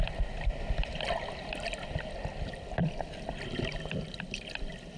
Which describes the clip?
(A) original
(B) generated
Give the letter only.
A